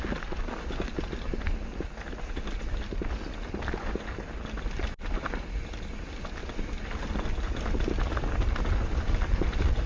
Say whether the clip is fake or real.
real